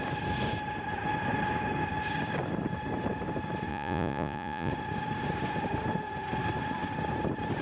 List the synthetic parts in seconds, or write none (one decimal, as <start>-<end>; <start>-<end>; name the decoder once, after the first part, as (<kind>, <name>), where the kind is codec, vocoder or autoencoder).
3.7-4.7 (vocoder, Vocos)

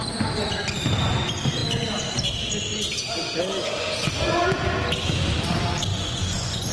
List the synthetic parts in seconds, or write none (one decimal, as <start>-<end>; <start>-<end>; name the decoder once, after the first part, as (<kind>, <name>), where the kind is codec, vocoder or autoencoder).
5.9-6.7 (vocoder, Vocos)

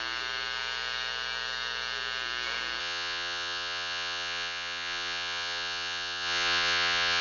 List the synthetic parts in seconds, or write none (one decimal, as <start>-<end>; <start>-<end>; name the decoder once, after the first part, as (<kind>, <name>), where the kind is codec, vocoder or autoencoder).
2.8-7.2 (vocoder, Vocos)

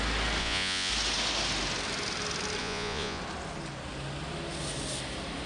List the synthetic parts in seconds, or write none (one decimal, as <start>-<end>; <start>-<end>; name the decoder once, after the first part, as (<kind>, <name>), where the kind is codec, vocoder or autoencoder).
0.4-0.9 (vocoder, Vocos); 2.6-3.2

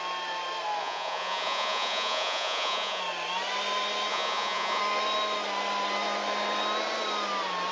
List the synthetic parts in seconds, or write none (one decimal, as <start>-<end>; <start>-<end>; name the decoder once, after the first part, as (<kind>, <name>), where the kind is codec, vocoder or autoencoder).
0.8-3.0 (vocoder, Vocos); 4.1-4.8